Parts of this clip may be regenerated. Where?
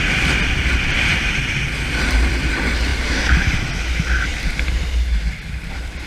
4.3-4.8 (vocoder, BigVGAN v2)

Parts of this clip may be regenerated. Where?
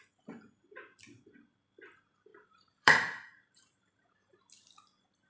2.3-4.4 (vocoder, BigVGAN v2)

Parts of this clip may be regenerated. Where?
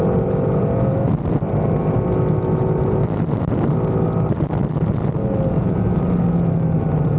none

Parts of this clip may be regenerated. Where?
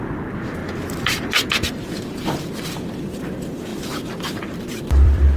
0.0-0.6 (vocoder, BigVGAN v2); 1.7-3.7; 4.8-5.4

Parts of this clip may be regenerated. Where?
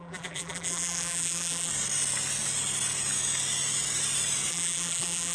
0.0-1.7 (vocoder, BigVGAN v2); 4.5-5.3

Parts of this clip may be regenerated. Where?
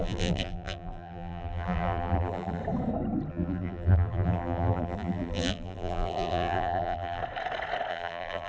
0.0-2.6 (vocoder, BigVGAN v2); 3.3-7.2; 7.9-8.5